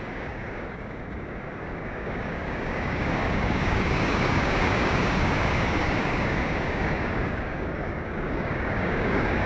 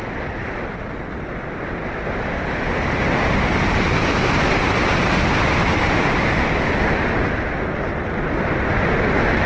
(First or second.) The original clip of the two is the second